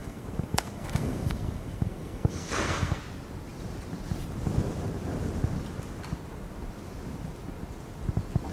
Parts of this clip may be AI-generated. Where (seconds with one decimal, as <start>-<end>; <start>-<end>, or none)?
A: 0.0-3.0